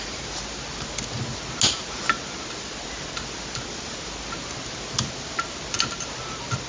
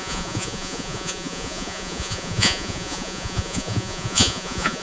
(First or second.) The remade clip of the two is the second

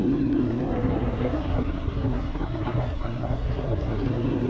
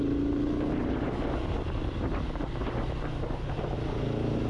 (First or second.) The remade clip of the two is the first